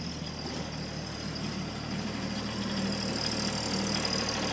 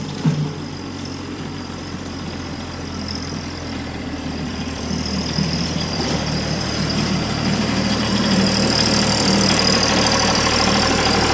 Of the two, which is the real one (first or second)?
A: first